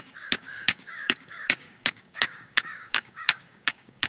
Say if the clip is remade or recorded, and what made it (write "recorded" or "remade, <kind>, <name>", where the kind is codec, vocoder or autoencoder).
remade, codec, DAC